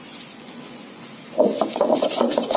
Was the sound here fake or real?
fake